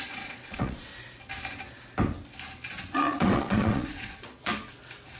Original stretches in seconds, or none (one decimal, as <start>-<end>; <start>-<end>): 0.9-2.7; 4.5-5.2